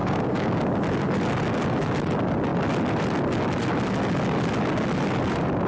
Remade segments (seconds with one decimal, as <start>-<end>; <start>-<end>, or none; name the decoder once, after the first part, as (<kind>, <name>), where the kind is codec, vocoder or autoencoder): 0.0-0.6 (codec, DAC)